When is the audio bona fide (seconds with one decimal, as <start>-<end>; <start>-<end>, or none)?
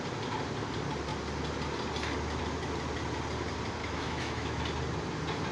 0.0-3.8; 4.6-5.5